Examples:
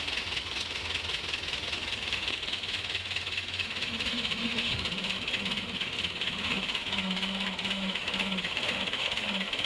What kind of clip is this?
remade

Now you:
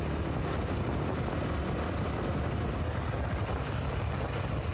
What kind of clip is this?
recorded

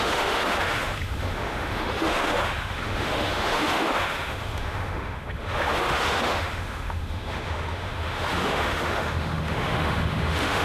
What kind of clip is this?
remade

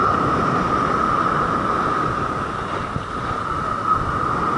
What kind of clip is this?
recorded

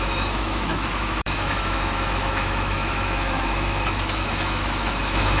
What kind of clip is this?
remade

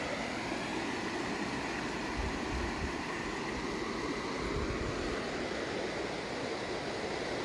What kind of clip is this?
recorded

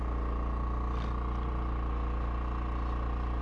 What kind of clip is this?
recorded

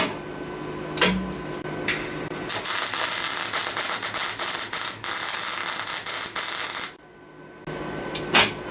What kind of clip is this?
recorded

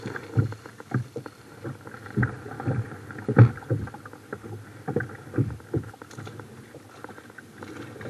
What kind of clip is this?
recorded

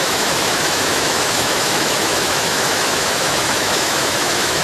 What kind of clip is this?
remade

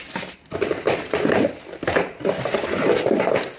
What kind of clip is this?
recorded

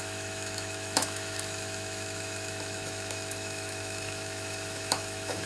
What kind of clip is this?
remade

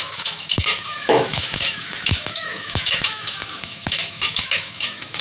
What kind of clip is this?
remade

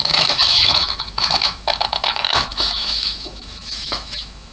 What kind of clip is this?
remade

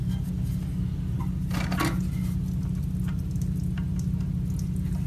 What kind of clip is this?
recorded